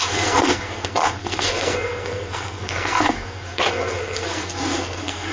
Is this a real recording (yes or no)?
no